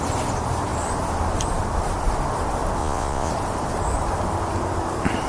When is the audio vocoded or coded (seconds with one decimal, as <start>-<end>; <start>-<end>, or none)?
2.8-3.3